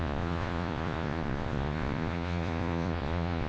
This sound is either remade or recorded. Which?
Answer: remade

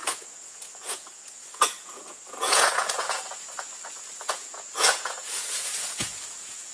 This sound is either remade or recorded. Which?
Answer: remade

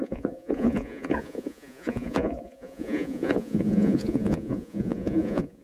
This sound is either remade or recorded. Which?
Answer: remade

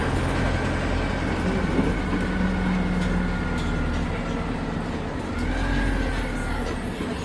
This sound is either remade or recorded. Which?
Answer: recorded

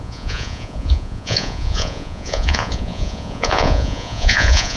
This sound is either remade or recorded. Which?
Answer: remade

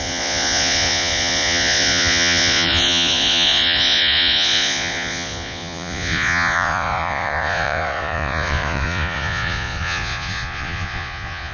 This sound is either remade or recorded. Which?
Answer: remade